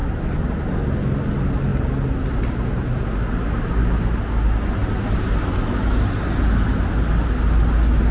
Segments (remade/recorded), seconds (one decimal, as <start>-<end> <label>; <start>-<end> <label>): 0.0-8.1 recorded